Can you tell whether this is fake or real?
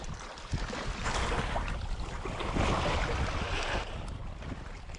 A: fake